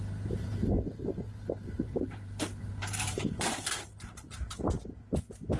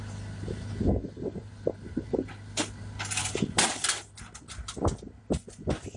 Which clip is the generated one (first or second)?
first